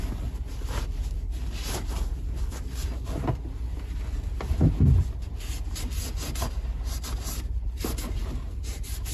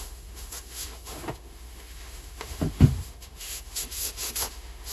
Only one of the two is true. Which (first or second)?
first